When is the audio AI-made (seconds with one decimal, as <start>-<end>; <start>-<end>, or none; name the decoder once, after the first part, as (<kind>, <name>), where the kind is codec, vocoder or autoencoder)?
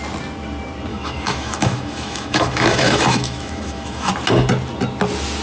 0.9-4.1 (autoencoder, DAC-VAE)